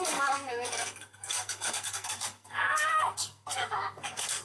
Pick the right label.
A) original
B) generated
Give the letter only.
B